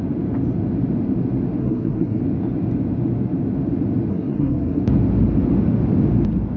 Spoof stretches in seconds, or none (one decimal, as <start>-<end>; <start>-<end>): 1.6-2.2; 4.1-4.8